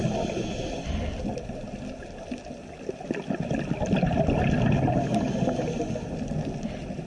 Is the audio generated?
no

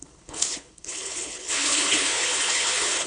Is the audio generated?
yes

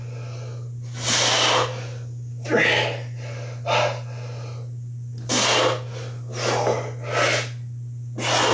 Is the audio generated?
no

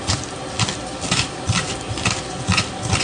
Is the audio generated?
no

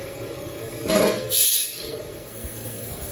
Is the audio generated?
yes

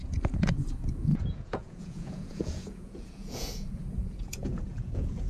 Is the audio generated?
yes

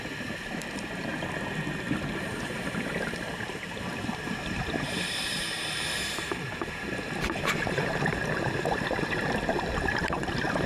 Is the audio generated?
yes